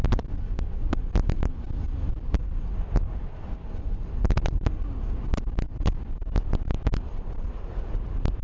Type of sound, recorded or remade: recorded